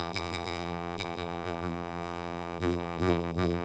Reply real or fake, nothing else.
fake